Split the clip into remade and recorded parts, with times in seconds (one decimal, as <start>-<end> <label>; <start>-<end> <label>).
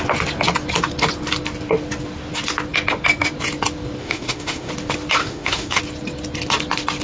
0.0-4.0 recorded; 4.0-4.7 remade; 4.7-5.2 recorded; 5.2-5.8 remade; 5.8-7.0 recorded